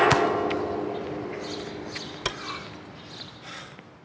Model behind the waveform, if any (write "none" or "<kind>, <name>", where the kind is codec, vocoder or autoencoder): none